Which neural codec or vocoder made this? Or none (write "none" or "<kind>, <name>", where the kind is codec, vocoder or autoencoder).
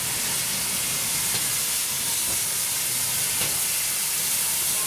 none